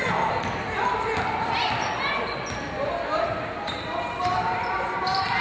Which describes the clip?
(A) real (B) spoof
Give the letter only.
A